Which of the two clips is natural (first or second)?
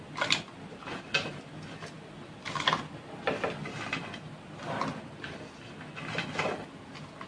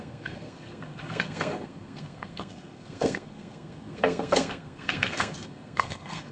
first